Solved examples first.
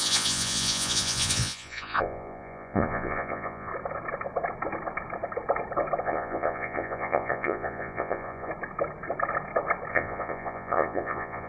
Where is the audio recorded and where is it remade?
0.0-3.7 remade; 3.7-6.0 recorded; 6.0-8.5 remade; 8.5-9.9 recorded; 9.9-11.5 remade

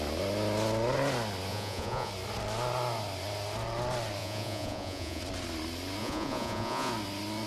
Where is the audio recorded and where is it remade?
0.0-1.5 recorded; 1.5-2.1 remade; 2.1-4.2 recorded; 4.2-5.2 remade; 5.2-6.0 recorded; 6.0-6.9 remade; 6.9-7.5 recorded

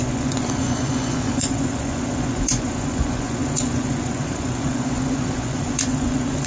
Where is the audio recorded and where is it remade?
0.0-6.5 remade